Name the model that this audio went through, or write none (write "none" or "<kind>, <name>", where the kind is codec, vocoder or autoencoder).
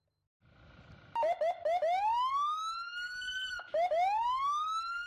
none